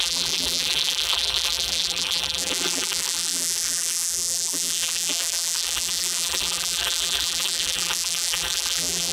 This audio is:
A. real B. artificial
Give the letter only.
B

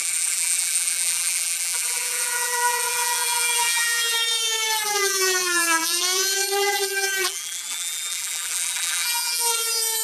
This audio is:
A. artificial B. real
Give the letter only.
A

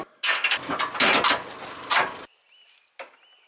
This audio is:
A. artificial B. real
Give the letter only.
B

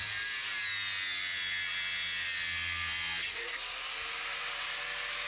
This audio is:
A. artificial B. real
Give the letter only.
B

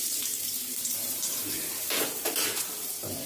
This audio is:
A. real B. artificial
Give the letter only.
B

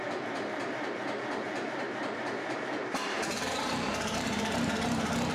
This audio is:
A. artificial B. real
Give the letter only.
A